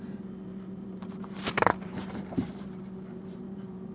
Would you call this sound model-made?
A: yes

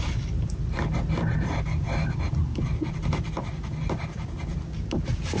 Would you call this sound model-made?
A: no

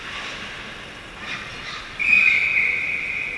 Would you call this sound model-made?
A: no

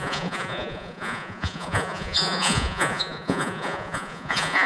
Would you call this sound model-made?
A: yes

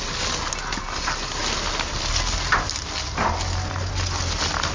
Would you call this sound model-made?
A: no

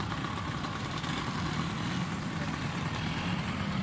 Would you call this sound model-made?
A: no